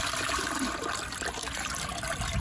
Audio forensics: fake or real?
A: real